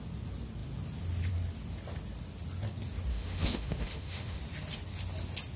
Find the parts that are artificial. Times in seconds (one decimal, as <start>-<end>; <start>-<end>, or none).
3.1-4.4

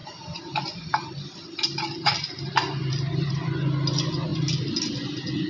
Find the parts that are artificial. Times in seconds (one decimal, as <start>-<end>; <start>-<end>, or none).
0.0-3.3

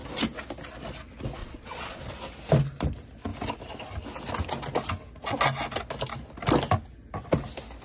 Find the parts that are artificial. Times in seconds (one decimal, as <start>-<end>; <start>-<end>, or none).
1.4-2.0

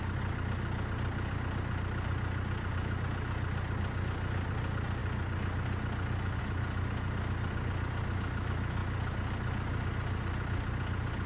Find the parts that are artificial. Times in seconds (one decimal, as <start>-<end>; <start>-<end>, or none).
none

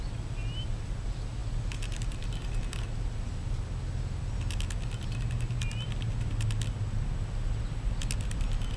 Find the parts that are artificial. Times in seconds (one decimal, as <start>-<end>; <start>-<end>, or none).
none

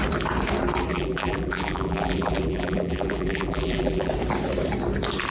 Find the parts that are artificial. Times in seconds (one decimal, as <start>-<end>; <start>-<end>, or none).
0.9-4.1

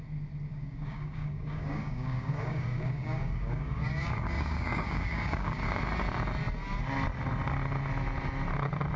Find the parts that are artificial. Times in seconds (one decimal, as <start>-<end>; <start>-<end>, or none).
0.5-5.8